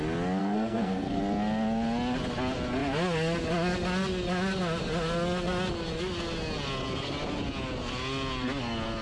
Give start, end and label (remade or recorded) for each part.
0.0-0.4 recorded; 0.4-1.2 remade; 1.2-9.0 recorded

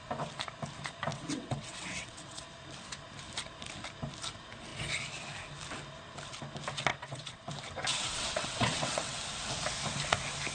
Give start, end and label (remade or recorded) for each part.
0.0-1.1 recorded; 1.1-2.4 remade; 2.4-6.9 recorded; 6.9-7.5 remade; 7.5-7.9 recorded; 7.9-9.2 remade; 9.2-10.5 recorded

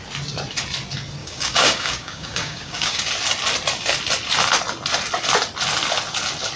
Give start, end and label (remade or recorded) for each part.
0.0-1.2 recorded; 1.2-3.1 remade; 3.1-6.6 recorded

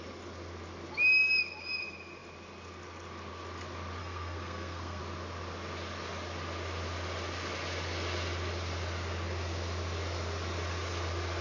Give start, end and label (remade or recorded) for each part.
0.0-4.0 recorded; 4.0-5.0 remade; 5.0-11.4 recorded

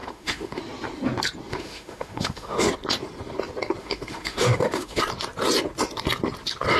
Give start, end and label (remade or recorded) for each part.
0.0-0.6 remade; 0.6-1.5 recorded; 1.5-2.7 remade; 2.7-3.8 recorded; 3.8-5.0 remade; 5.0-6.8 recorded